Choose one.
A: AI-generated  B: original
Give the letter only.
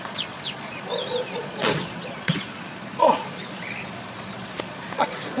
A